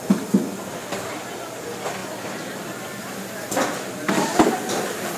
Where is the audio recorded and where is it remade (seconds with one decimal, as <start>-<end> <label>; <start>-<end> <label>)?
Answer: 0.0-2.0 recorded; 2.0-5.2 remade